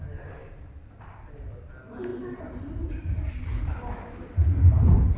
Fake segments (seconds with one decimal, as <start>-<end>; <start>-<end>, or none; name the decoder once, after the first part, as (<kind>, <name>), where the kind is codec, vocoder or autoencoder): 2.1-3.3 (vocoder, BigVGAN v2)